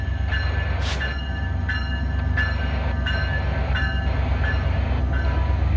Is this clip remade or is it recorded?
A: recorded